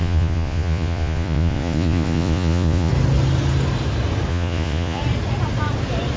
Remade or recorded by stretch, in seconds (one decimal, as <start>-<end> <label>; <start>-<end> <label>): 0.0-2.9 remade; 2.9-4.3 recorded; 4.3-5.0 remade; 5.0-6.2 recorded